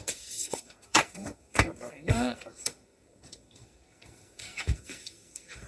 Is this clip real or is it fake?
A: fake